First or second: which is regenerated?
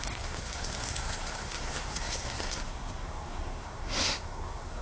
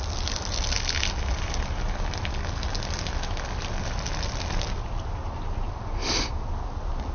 first